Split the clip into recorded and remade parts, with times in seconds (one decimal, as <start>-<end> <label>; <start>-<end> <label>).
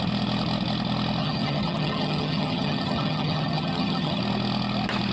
0.0-1.2 recorded; 1.2-4.2 remade; 4.2-5.1 recorded